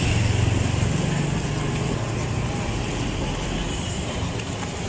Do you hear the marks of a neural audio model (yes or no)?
no